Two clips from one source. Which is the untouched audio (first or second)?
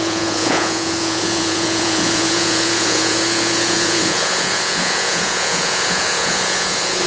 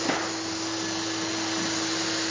second